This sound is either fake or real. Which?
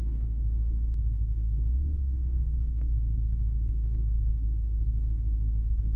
fake